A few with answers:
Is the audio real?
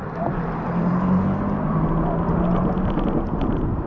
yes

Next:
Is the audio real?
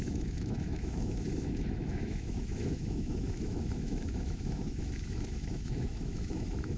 no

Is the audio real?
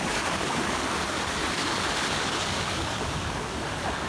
no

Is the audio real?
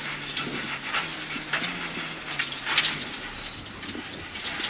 yes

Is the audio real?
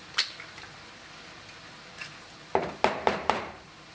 yes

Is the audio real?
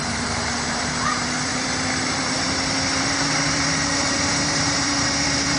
no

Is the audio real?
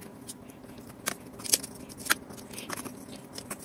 yes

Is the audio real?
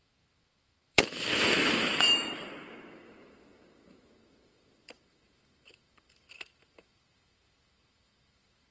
no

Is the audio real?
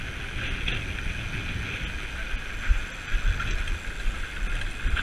yes